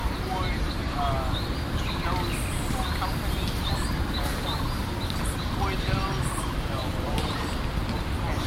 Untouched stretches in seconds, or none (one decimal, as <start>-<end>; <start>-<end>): 0.9-8.5